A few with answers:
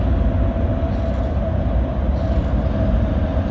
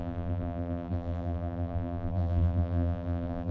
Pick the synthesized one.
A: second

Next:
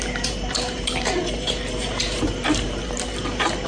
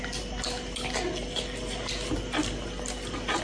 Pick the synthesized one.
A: first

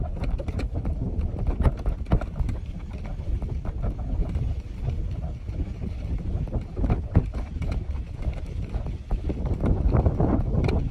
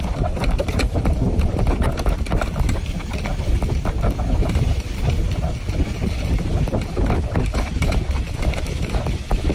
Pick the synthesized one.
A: second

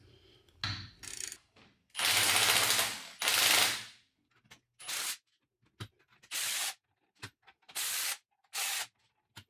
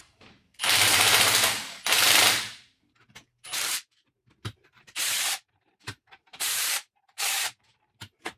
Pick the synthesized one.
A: second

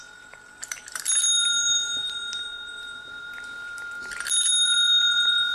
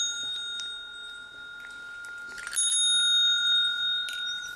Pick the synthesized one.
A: first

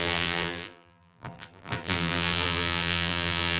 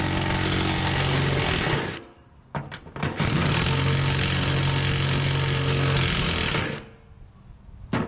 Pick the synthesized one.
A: first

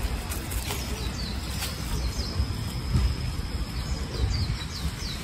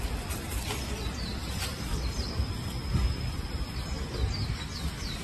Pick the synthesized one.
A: second